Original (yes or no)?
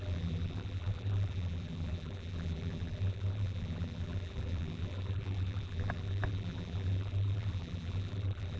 no